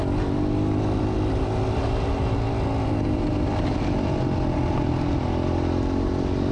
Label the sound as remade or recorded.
recorded